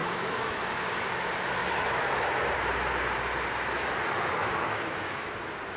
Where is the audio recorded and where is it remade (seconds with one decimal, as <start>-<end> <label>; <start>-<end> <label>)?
0.0-0.6 remade; 0.6-1.6 recorded; 1.6-2.1 remade; 2.1-4.4 recorded; 4.4-5.3 remade; 5.3-5.8 recorded